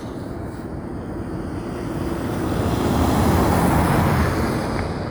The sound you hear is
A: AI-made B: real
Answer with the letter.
B